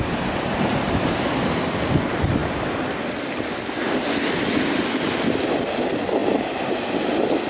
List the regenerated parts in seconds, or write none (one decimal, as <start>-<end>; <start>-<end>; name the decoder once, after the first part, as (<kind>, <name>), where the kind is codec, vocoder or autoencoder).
none